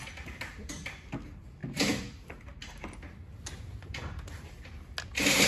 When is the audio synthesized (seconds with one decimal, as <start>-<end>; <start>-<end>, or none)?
none